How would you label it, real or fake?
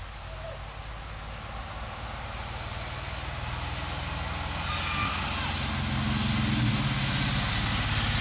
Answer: real